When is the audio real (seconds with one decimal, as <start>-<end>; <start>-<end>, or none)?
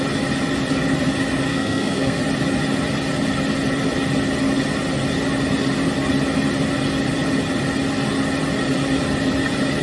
0.0-1.5; 2.2-9.8